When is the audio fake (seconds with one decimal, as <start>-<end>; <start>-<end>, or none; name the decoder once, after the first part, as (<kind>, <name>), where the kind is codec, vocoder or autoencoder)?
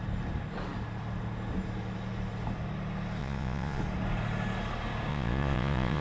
3.2-3.8 (vocoder, Vocos); 5.1-6.0